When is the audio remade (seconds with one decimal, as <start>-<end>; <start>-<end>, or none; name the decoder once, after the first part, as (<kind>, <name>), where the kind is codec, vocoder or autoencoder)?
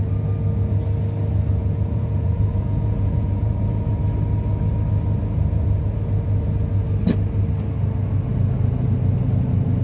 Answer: 1.6-3.9 (vocoder, Vocos)